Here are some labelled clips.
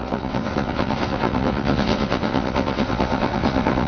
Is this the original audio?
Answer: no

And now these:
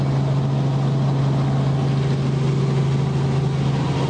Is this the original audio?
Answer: yes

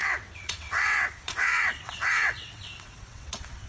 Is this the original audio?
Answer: no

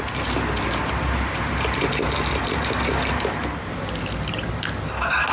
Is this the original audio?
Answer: yes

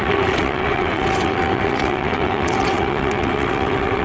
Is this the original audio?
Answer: no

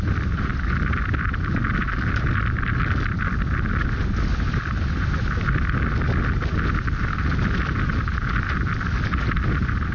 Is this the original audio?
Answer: yes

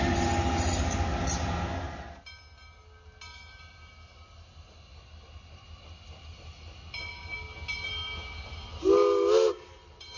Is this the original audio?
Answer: yes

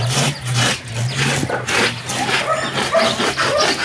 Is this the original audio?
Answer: yes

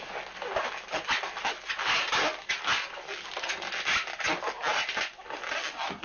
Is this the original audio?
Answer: yes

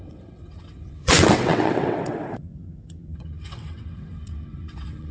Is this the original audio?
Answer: no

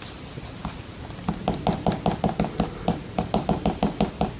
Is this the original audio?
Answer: yes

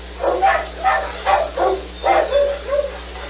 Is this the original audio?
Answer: yes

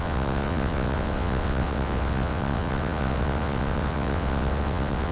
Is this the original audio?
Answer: no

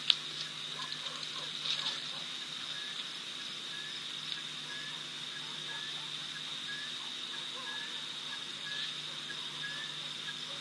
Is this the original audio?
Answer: yes